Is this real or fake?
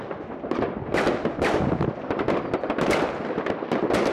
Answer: real